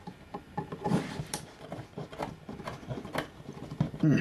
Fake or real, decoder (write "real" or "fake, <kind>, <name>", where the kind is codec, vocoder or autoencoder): real